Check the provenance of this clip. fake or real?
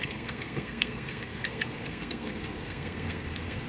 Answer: fake